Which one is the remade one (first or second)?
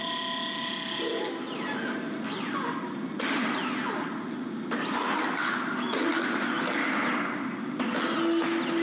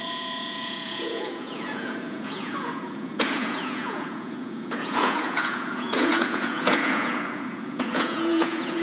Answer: second